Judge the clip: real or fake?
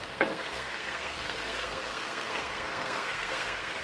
fake